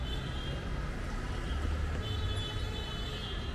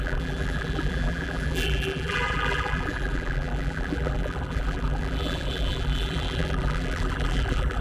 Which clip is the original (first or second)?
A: first